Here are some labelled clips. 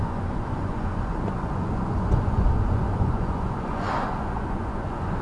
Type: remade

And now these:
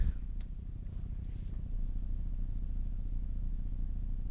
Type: recorded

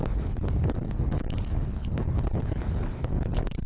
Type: remade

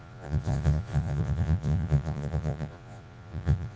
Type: remade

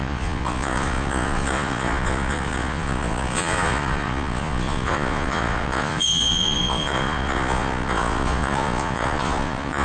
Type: remade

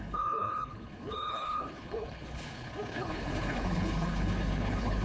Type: remade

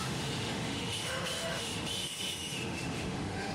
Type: remade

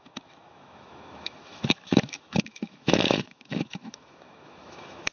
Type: remade